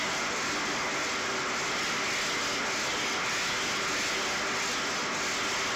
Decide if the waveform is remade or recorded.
recorded